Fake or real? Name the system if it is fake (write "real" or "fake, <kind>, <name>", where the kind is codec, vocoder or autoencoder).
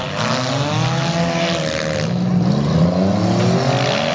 real